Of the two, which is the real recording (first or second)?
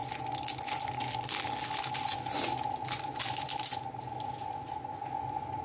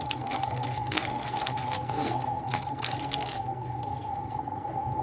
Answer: first